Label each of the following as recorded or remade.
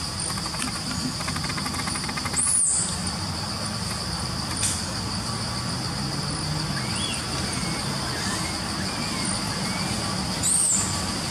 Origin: recorded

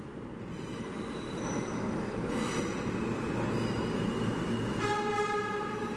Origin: recorded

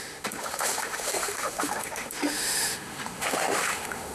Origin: remade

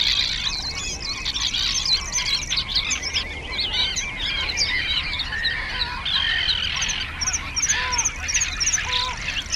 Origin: recorded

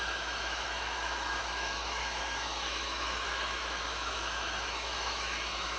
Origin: remade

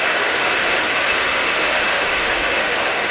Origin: remade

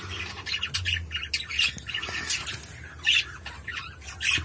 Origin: recorded